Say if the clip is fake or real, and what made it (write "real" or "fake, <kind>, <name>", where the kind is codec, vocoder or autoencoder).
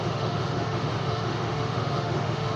fake, autoencoder, DAC-VAE